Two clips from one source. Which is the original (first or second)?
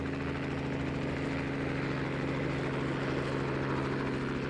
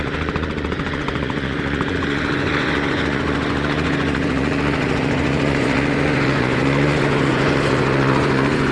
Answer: first